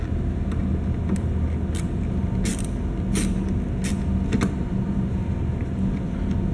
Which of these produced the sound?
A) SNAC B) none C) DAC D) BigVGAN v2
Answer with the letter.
B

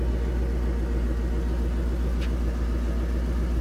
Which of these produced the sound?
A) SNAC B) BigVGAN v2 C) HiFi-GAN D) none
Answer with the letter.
D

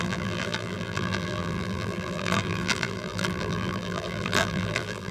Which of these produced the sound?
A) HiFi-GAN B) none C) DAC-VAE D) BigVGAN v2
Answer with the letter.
D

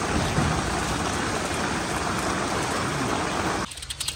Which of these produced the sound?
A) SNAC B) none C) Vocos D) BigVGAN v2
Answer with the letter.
B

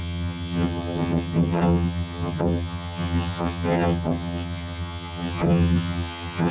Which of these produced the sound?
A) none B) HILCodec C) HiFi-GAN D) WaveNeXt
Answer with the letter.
C